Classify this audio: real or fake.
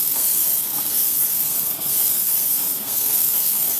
fake